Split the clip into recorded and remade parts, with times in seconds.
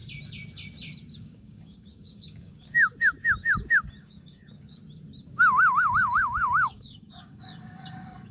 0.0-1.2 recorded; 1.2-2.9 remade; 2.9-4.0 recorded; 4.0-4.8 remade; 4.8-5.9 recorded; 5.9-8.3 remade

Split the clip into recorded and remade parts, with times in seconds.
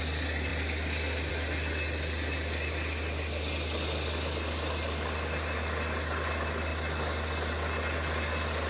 0.0-8.7 recorded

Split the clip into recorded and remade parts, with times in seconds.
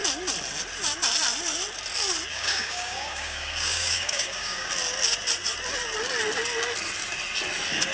0.0-2.3 recorded; 2.3-4.7 remade; 4.7-7.9 recorded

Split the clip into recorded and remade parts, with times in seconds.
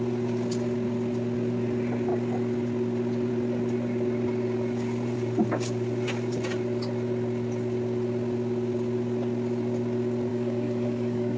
0.0-10.3 recorded; 10.3-11.4 remade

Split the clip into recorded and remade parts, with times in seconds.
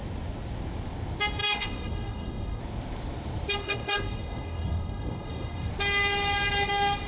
0.0-1.4 recorded; 1.4-2.6 remade; 2.6-3.6 recorded; 3.6-5.7 remade; 5.7-7.1 recorded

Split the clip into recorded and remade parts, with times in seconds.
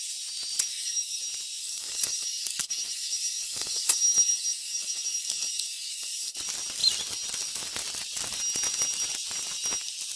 0.0-0.7 recorded; 0.7-1.2 remade; 1.2-1.6 recorded; 1.6-6.3 remade; 6.3-10.2 recorded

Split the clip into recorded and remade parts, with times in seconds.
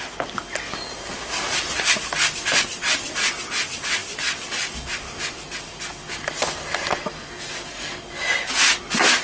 0.0-9.2 recorded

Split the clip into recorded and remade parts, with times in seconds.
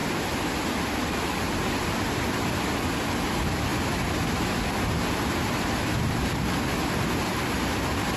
0.0-8.2 recorded